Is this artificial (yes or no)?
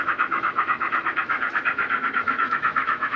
yes